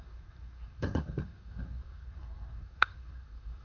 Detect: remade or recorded remade